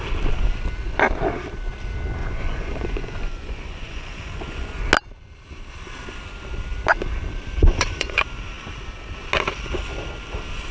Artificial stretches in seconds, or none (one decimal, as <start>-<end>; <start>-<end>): 2.2-4.8; 7.6-8.2